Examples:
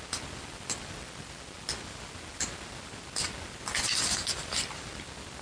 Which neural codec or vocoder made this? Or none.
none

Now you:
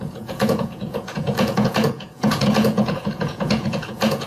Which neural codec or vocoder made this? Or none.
vocoder, Vocos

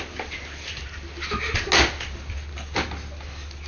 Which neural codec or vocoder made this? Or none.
none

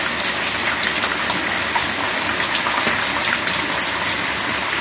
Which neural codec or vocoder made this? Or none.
none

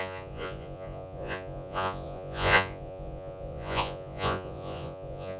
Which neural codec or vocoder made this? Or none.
vocoder, Vocos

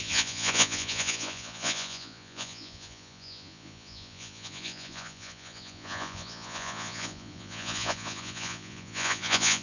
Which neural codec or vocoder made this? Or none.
vocoder, Vocos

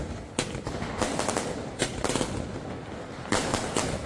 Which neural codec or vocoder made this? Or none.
none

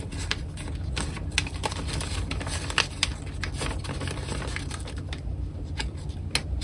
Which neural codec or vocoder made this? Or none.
none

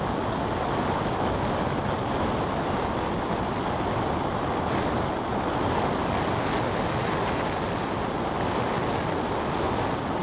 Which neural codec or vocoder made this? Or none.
none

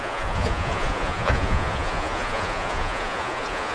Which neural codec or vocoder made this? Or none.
vocoder, Vocos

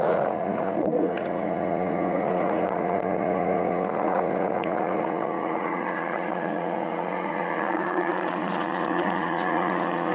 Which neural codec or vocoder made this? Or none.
vocoder, Vocos